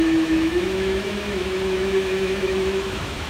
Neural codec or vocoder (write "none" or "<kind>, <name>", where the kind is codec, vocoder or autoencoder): autoencoder, DAC-VAE